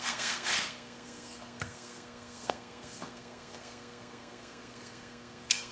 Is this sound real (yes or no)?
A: no